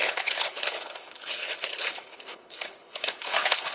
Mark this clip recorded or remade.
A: remade